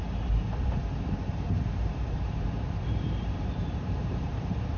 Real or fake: fake